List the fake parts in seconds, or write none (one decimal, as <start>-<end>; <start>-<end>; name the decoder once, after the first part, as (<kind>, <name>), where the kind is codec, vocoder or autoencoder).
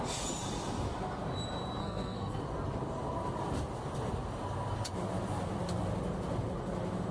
1.8-2.4 (codec, SNAC)